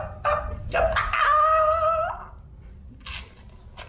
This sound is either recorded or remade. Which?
recorded